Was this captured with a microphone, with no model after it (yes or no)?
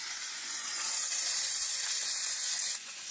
no